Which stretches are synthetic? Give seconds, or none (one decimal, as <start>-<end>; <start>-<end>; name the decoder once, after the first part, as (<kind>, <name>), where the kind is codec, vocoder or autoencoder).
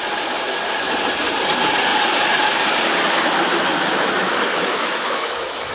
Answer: 3.7-5.7 (autoencoder, DAC-VAE)